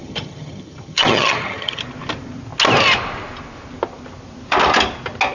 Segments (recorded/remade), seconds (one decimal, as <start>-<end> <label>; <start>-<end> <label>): 0.0-1.8 remade; 1.8-5.3 recorded